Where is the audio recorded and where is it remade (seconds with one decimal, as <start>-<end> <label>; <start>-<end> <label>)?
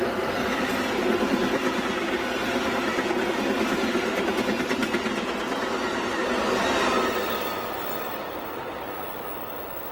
0.0-9.9 recorded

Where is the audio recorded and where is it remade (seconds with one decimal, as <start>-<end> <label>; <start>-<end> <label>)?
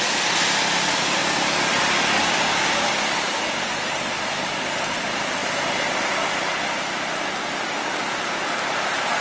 0.0-2.2 recorded; 2.2-3.0 remade; 3.0-9.2 recorded